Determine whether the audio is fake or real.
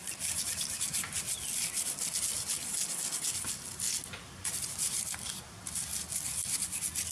real